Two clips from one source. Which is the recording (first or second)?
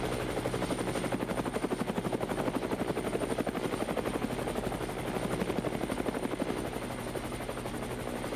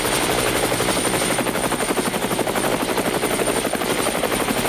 first